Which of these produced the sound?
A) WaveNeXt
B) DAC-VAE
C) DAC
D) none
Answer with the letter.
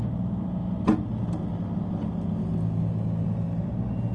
D